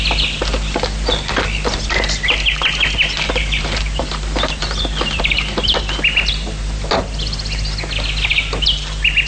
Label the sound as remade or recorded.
recorded